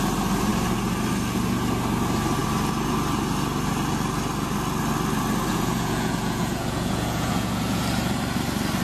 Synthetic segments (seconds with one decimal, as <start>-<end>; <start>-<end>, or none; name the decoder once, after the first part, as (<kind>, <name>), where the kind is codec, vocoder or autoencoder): 5.5-7.8 (vocoder, Vocos)